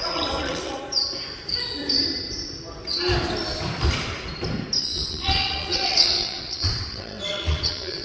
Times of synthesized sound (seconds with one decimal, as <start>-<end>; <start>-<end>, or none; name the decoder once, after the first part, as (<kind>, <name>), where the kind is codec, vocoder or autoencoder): 0.0-0.8 (vocoder, WaveNeXt); 4.8-8.0